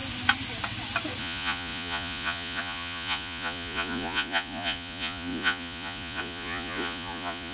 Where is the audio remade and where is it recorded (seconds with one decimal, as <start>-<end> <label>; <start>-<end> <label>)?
0.0-1.2 recorded; 1.2-7.5 remade